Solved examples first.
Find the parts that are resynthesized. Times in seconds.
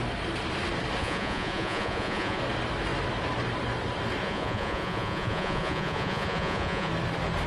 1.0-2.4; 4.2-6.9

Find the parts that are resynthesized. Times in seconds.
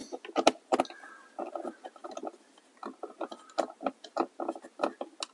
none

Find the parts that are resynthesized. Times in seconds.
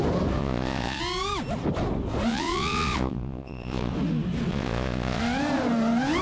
0.4-1.0; 2.3-3.9; 4.5-5.2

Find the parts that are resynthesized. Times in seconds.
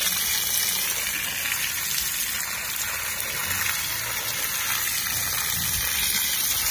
none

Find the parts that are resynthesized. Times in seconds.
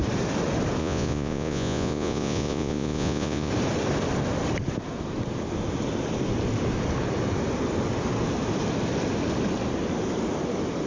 0.8-3.5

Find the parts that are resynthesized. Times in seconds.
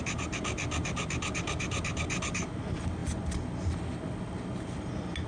none